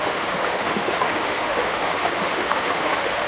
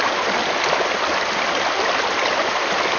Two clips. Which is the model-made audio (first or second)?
first